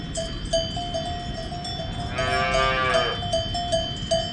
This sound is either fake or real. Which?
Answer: real